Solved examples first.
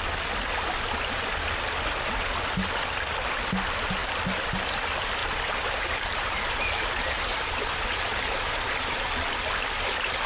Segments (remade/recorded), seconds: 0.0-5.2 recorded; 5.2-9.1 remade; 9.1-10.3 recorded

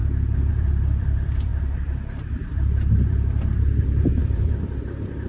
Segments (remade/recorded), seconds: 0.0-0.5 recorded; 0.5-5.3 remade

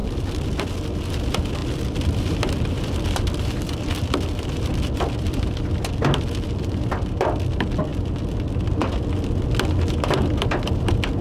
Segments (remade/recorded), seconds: 0.0-0.6 remade; 0.6-1.6 recorded; 1.6-6.9 remade; 6.9-11.2 recorded

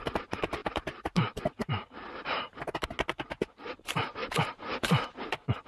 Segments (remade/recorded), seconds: 0.0-0.6 recorded; 0.6-2.4 remade; 2.4-4.2 recorded; 4.2-4.8 remade; 4.8-5.7 recorded

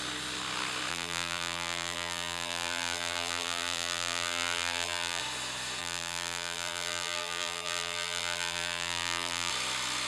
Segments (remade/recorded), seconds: 0.0-0.9 recorded; 0.9-5.2 remade; 5.2-5.8 recorded; 5.8-9.5 remade; 9.5-10.1 recorded